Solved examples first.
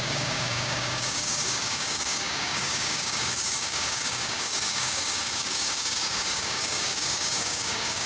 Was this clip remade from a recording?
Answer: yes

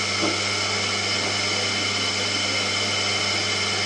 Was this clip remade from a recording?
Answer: no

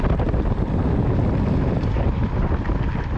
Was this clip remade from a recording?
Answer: no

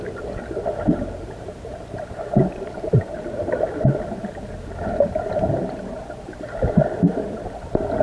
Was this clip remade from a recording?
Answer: no